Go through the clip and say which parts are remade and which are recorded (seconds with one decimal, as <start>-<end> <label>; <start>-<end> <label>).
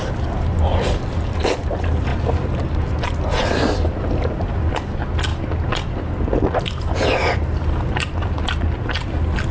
0.0-9.5 recorded